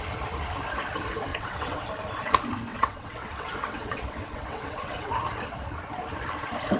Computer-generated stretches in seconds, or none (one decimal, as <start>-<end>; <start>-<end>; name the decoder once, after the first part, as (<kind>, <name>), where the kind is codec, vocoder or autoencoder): 1.3-1.9 (vocoder, WaveNeXt); 2.7-5.1